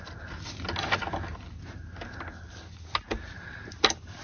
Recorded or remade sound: recorded